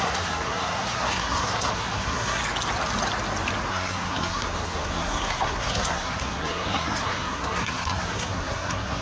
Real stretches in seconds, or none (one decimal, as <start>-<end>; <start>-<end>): 2.4-3.7